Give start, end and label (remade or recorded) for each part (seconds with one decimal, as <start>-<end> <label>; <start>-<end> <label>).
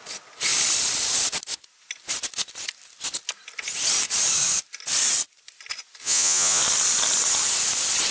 0.0-6.0 recorded; 6.0-6.6 remade; 6.6-8.1 recorded